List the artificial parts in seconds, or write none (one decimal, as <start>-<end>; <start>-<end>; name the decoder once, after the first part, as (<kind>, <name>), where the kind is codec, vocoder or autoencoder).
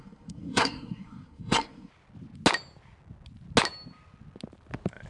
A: 0.0-1.9 (codec, SNAC)